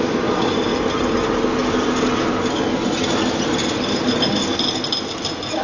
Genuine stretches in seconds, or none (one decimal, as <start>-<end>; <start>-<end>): 0.0-5.6